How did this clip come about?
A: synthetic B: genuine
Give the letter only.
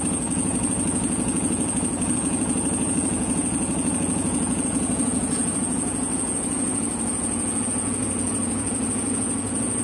A